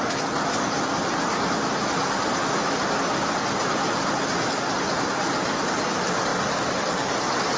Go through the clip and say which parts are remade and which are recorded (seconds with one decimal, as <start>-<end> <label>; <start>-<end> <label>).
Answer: 0.0-7.6 recorded